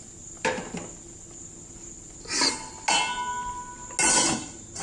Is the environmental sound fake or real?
real